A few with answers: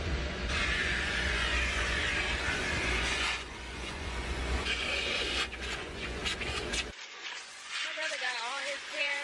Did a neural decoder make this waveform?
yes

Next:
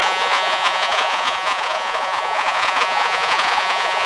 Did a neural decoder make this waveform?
yes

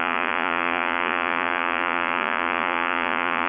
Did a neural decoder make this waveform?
yes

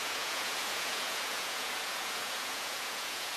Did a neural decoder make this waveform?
yes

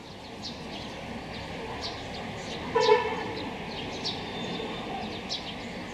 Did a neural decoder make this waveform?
no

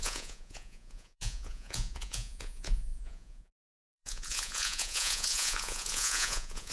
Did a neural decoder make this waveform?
yes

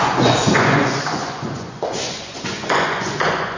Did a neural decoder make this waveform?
yes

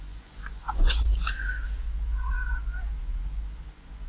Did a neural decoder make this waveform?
yes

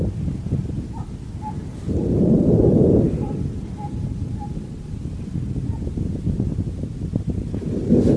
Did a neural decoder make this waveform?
no